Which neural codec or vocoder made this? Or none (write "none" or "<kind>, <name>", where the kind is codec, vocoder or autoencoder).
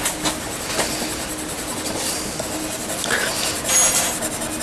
none